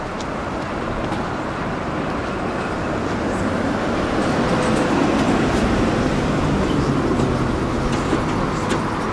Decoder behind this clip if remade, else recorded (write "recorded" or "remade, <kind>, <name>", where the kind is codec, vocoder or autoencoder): recorded